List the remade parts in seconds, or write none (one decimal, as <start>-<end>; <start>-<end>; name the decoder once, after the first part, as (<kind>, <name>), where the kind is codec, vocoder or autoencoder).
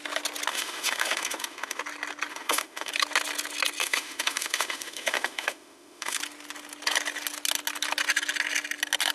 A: 0.5-1.8 (autoencoder, DAC-VAE); 2.3-2.9; 3.8-6.2